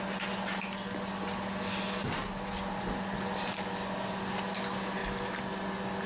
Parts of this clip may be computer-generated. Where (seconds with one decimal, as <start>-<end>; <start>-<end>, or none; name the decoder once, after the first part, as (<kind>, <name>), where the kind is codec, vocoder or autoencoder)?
none